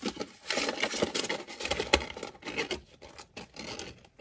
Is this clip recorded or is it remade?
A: recorded